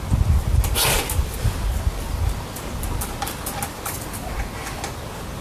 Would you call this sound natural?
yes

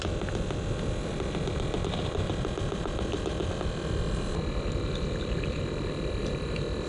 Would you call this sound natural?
yes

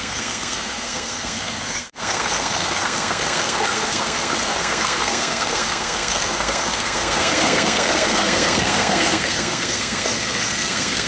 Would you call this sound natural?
no